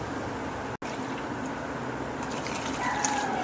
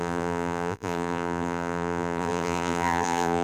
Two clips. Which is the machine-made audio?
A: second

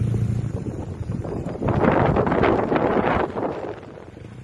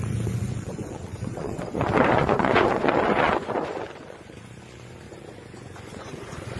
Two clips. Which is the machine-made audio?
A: second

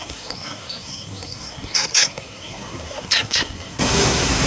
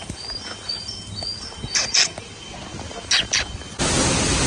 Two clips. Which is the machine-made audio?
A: first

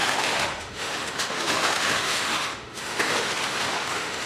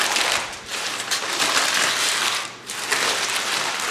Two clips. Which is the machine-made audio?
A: first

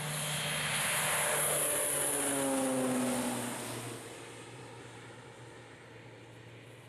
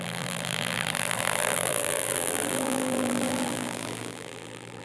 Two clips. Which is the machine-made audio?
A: second